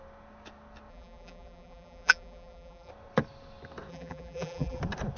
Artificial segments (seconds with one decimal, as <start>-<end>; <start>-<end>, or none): 0.9-2.9; 3.9-4.8